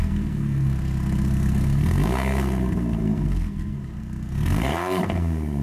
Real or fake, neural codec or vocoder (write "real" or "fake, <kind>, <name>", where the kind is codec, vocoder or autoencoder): fake, codec, SNAC